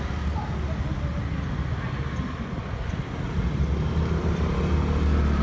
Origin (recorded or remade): recorded